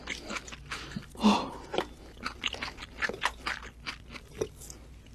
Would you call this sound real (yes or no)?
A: yes